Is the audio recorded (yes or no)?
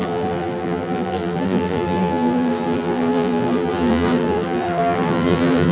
no